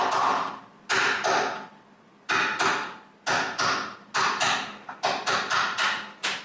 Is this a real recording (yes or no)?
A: yes